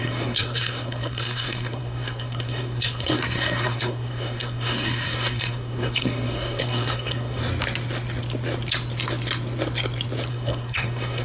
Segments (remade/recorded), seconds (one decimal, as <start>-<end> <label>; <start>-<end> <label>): 0.0-7.4 remade; 7.4-10.3 recorded; 10.3-11.2 remade